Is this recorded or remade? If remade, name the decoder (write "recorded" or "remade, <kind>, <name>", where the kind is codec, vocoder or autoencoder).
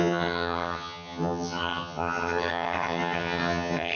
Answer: remade, vocoder, HiFi-GAN